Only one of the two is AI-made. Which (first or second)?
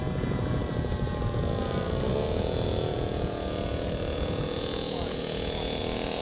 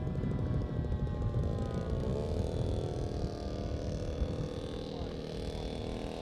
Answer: first